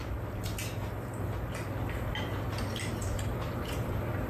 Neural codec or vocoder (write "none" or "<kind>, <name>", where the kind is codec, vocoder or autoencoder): none